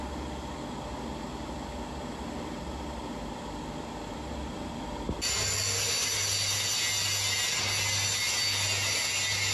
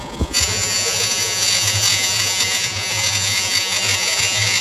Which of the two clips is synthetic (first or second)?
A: second